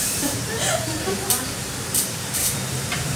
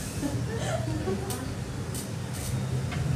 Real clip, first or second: second